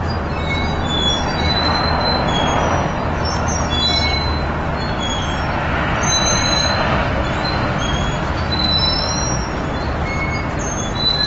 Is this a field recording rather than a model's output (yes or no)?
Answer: yes